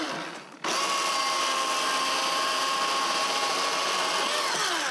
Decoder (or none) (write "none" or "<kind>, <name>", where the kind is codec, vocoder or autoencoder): none